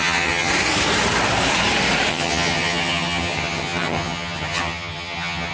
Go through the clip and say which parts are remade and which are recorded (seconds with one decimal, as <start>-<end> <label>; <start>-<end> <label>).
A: 0.0-0.5 remade; 0.5-2.1 recorded; 2.1-5.5 remade